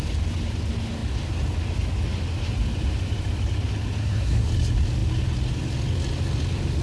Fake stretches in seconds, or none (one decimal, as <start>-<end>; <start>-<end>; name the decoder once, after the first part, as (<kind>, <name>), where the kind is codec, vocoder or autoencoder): 4.0-4.5 (codec, SNAC)